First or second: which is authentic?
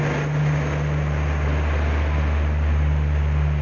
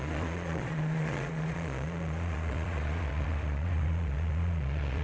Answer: first